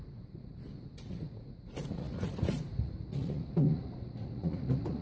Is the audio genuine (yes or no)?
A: no